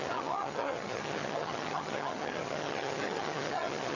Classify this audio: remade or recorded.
remade